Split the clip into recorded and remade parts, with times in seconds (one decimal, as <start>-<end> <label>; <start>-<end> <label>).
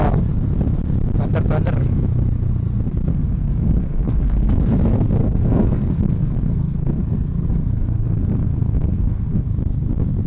0.0-3.1 recorded; 3.1-4.6 remade; 4.6-5.2 recorded; 5.2-9.5 remade; 9.5-10.3 recorded